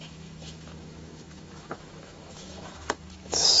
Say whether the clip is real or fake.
fake